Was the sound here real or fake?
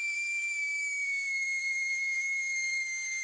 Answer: fake